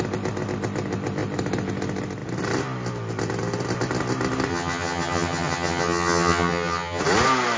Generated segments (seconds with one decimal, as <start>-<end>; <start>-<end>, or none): 4.5-7.0